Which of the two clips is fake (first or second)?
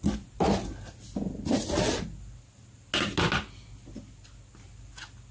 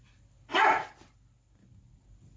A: second